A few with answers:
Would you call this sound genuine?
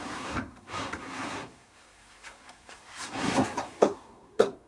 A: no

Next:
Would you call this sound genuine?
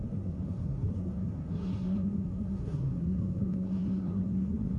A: no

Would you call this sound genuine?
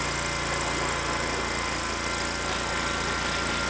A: yes